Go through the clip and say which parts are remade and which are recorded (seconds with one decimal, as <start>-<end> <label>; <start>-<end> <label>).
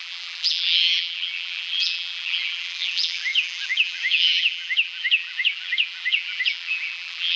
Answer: 0.0-7.4 remade